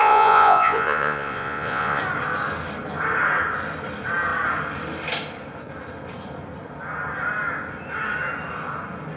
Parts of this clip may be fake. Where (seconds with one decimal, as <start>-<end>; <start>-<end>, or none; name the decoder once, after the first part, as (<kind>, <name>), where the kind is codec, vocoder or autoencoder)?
0.0-2.0 (vocoder, Vocos)